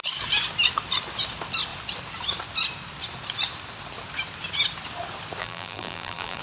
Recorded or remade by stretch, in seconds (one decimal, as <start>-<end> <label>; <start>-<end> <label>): 0.0-5.4 recorded; 5.4-6.4 remade